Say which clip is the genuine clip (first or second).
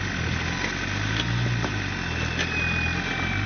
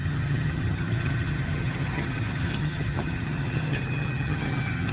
first